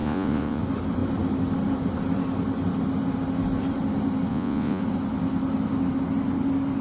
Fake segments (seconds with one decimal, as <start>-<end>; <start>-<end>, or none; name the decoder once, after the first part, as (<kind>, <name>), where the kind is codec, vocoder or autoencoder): 0.0-0.6 (vocoder, Vocos); 4.3-4.8